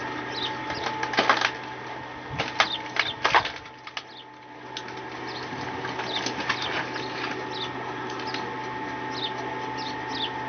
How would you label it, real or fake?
real